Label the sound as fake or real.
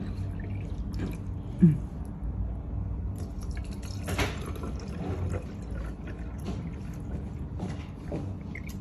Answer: real